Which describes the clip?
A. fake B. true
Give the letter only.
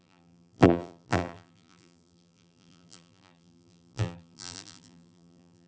A